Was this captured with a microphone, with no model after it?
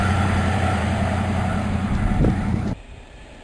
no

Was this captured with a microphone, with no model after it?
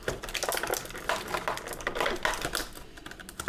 yes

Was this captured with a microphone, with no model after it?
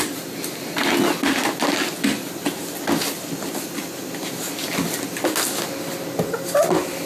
yes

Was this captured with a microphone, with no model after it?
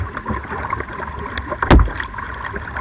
yes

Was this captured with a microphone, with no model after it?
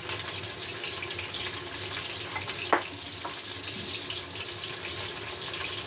yes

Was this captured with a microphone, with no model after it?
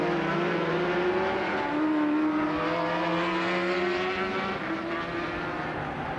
no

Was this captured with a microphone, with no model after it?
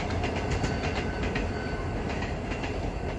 yes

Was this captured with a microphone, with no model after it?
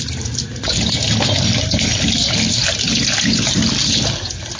yes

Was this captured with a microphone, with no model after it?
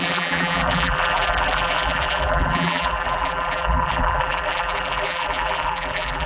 no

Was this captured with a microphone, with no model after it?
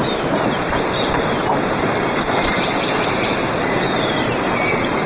no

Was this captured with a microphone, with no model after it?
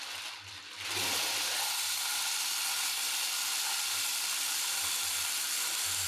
yes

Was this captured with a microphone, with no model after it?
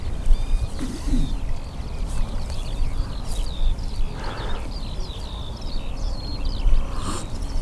no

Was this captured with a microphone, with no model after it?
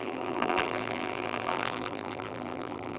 no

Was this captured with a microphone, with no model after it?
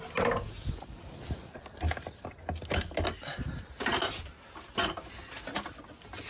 yes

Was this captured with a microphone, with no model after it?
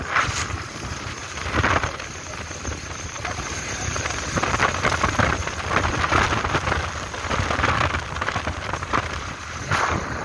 no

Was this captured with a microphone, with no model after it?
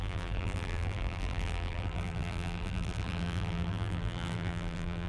no